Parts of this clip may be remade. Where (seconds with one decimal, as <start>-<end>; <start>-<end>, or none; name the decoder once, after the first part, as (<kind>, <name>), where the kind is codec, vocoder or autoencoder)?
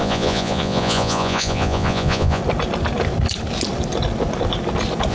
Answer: 0.0-2.4 (vocoder, Vocos)